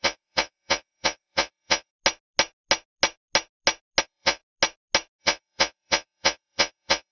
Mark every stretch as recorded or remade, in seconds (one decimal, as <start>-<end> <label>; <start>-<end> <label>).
0.0-1.9 remade; 1.9-4.0 recorded; 4.0-4.4 remade; 4.4-5.2 recorded; 5.2-7.1 remade